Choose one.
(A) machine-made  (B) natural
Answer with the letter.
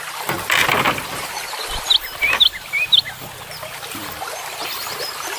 A